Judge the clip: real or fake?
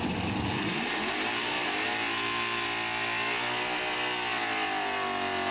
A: real